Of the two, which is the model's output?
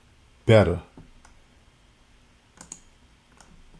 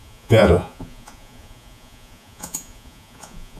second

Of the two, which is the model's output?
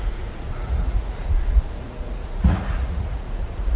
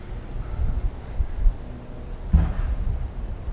first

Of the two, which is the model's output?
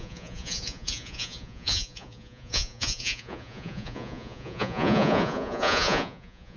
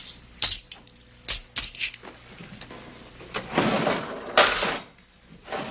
first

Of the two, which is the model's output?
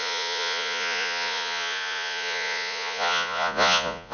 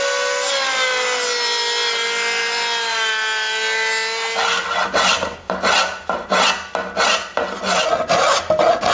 first